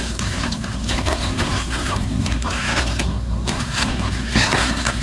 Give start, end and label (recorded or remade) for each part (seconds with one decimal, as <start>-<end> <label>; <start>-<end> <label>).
0.0-5.0 remade